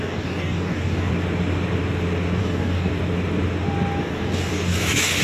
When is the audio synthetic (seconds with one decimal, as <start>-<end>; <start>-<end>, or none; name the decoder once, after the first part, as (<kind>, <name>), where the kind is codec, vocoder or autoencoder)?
0.0-1.1 (codec, DAC); 2.4-2.9; 4.0-5.2